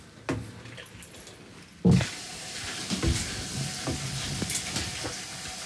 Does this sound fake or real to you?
real